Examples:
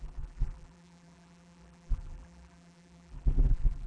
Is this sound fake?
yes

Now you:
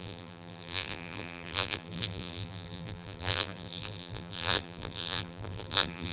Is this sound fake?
yes